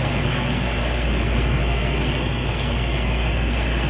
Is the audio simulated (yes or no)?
yes